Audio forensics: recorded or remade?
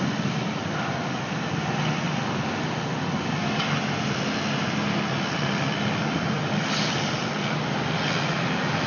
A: recorded